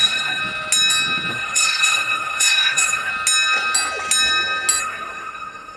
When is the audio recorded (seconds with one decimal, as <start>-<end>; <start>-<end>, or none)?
0.4-1.3; 3.1-4.8